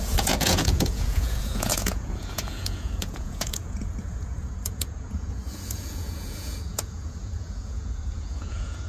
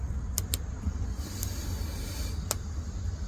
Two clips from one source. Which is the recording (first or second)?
second